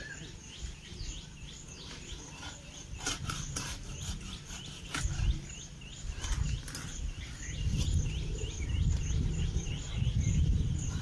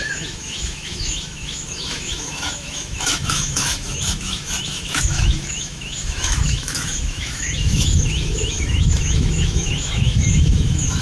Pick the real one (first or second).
first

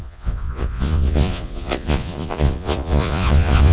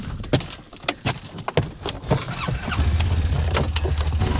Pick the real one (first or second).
second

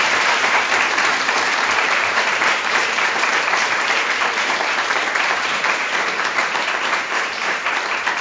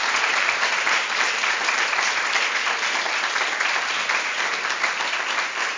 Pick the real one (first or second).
second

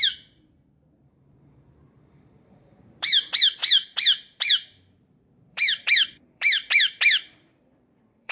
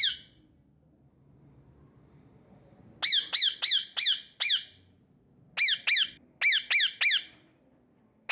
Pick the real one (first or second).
second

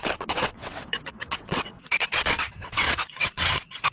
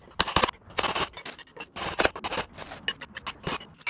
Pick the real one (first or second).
second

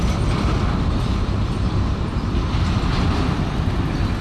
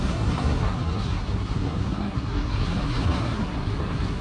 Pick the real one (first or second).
first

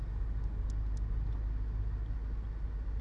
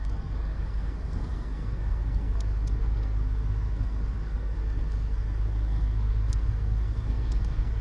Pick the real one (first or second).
first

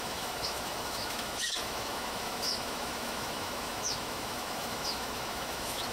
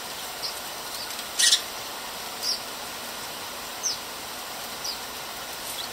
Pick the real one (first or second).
second